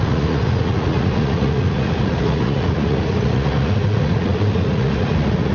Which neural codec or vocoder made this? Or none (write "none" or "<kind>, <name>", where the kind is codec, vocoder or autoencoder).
vocoder, Vocos